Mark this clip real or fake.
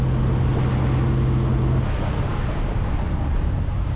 real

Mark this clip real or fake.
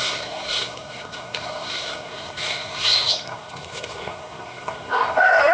fake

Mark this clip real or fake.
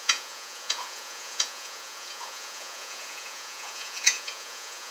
fake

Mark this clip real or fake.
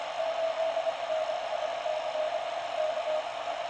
real